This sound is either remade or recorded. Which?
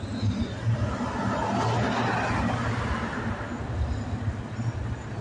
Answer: recorded